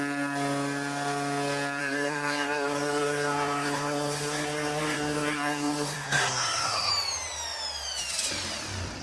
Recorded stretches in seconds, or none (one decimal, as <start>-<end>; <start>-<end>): 0.0-1.8; 6.9-9.0

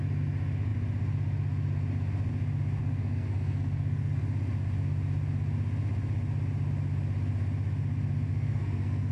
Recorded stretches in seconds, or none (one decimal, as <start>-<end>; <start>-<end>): 0.0-2.8; 4.2-8.3

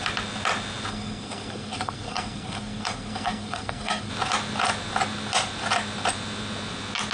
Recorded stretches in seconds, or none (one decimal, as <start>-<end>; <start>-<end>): 0.0-0.9; 4.1-7.1

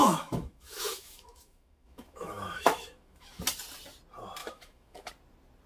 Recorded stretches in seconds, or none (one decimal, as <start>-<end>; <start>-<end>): 3.4-4.4; 5.1-5.7

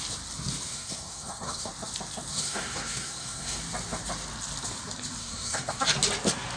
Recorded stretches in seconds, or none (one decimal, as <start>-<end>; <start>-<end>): 0.0-0.7; 1.7-2.3; 3.6-5.2; 5.8-6.6

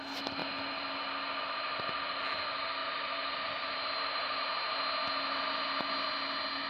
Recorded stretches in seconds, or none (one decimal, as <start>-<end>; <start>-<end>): 0.0-2.8; 4.4-6.7

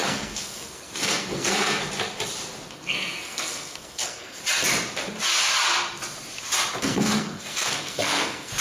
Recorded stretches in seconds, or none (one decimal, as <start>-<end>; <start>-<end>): 1.8-2.7; 4.4-6.8

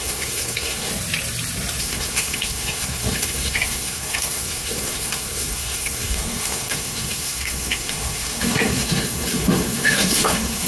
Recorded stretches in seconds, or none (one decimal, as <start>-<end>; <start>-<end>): 0.9-1.8